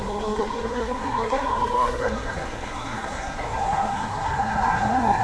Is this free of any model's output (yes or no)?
no